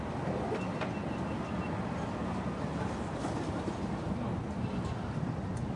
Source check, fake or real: real